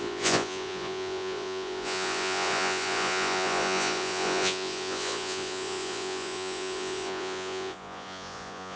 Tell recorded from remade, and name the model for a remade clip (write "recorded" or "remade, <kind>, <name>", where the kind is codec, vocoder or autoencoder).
remade, vocoder, Vocos